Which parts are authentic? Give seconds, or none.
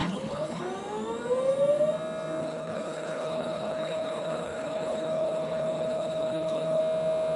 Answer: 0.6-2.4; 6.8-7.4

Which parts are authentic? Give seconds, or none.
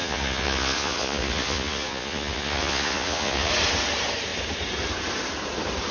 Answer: 3.5-5.9